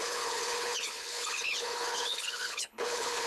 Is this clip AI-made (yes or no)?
yes